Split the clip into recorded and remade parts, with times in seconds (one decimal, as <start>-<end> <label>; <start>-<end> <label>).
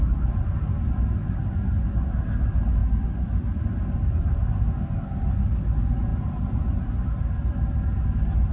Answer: 0.0-2.8 recorded; 2.8-3.6 remade; 3.6-8.5 recorded